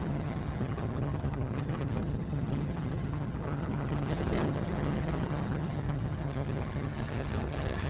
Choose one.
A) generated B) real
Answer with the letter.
A